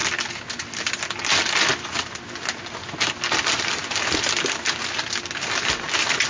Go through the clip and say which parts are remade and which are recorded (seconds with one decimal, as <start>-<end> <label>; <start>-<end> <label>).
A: 0.0-6.3 recorded